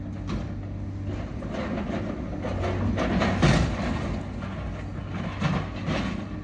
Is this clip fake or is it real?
real